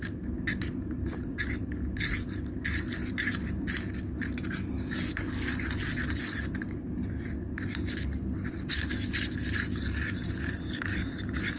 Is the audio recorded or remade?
recorded